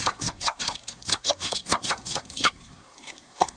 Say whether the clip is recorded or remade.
remade